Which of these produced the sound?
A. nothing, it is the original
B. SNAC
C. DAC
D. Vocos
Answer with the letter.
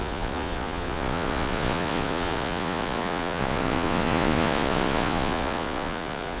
D